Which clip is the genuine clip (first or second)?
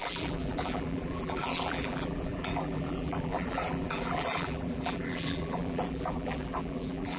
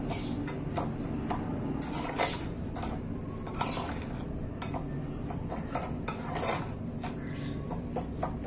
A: second